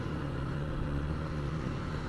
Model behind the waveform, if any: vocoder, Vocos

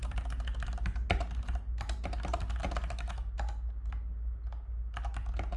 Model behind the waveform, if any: none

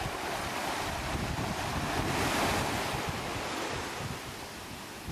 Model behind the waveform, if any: none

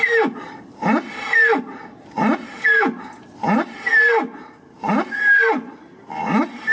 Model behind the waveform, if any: vocoder, BigVGAN v2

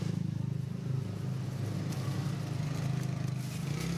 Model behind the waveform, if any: none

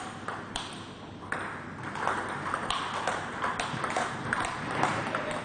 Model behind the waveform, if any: vocoder, BigVGAN v2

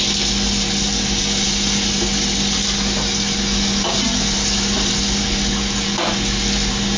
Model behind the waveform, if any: none